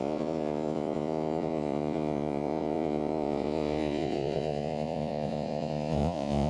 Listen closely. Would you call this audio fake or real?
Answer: fake